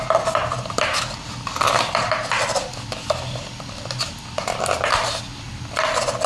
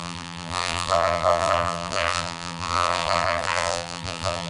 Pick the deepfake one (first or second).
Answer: second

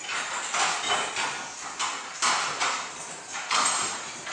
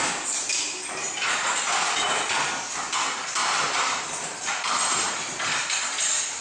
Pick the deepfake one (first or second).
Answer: second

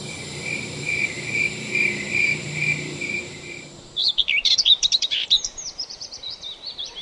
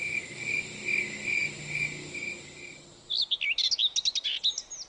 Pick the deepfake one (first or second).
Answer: first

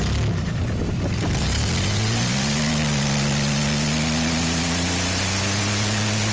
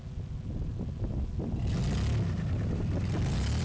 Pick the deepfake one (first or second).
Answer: first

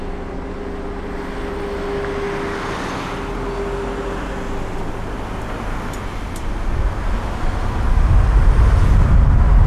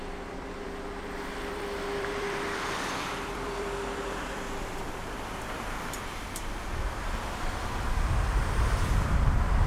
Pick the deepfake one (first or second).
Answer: second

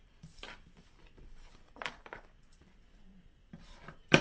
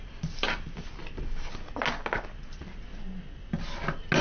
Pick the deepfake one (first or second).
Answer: first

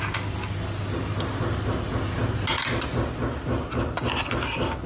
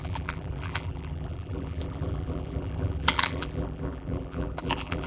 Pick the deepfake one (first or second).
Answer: second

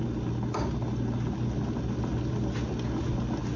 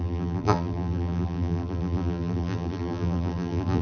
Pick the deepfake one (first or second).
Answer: second